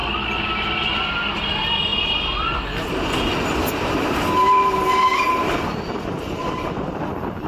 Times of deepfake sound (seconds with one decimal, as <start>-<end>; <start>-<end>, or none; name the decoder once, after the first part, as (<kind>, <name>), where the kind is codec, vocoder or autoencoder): none